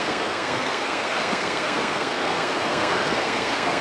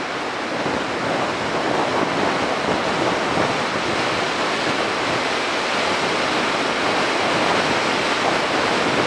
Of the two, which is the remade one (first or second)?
first